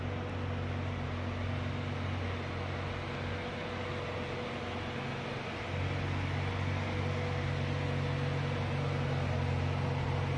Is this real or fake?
real